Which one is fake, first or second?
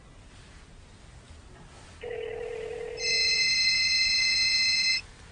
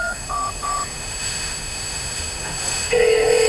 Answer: second